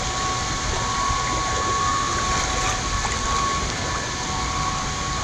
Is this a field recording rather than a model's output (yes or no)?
yes